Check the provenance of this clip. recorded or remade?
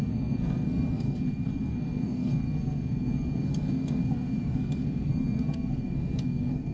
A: remade